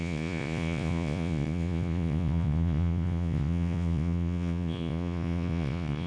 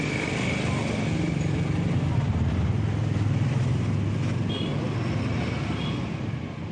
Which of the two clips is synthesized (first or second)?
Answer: first